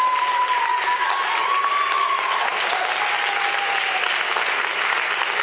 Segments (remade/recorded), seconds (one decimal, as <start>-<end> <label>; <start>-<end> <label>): 0.0-5.4 recorded